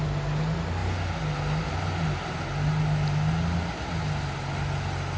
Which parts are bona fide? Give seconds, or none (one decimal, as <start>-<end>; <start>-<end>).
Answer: 0.0-5.2